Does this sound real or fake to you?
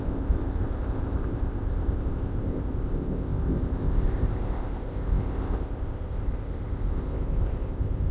fake